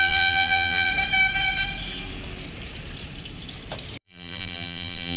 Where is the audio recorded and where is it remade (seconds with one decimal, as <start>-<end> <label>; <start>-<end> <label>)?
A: 0.0-0.9 remade; 0.9-4.0 recorded; 4.0-5.2 remade